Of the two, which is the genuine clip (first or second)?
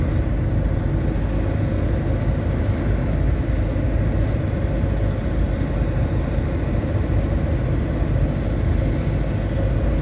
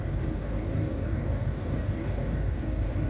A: first